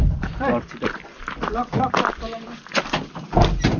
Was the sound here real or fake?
fake